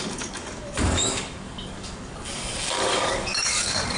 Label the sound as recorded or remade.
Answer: remade